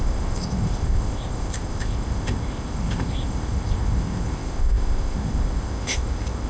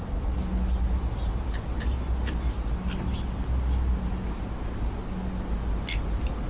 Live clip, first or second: second